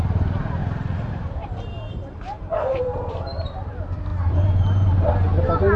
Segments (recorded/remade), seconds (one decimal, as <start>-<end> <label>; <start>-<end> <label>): 0.0-0.6 remade; 0.6-1.1 recorded; 1.1-5.8 remade